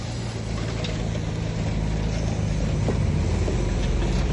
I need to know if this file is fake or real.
real